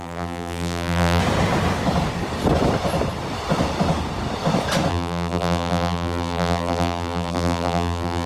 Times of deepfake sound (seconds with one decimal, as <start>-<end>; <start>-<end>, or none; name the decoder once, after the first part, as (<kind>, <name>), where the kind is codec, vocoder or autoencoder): 0.0-1.2 (vocoder, BigVGAN v2); 4.9-8.3